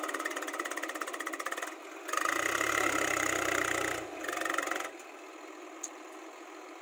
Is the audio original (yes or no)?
yes